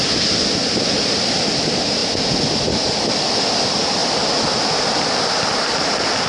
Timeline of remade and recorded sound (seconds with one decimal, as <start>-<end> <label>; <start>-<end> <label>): 0.0-6.3 recorded